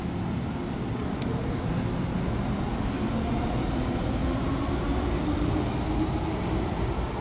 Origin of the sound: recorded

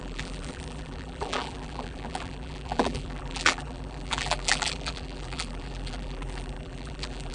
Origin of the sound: remade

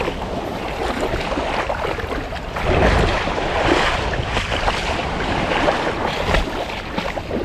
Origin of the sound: remade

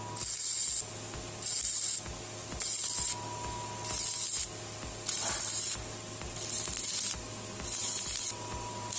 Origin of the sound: recorded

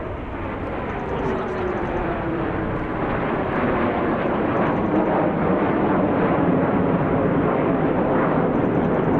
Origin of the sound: remade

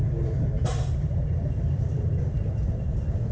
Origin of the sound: remade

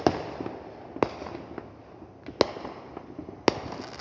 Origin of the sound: recorded